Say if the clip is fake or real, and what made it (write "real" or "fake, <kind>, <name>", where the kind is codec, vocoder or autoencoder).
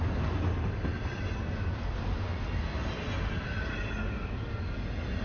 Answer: real